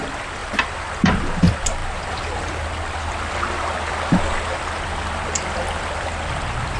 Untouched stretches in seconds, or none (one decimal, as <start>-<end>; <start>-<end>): 0.0-6.8